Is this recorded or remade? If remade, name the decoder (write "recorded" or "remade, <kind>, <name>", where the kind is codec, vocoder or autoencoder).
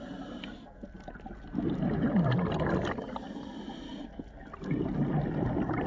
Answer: recorded